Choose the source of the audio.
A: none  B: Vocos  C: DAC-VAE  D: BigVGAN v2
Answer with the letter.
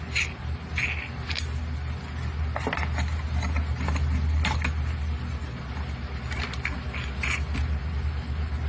A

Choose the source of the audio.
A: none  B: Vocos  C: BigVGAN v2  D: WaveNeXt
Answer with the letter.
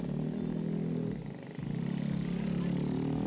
A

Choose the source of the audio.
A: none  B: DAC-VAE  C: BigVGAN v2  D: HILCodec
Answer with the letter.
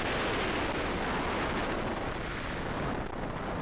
A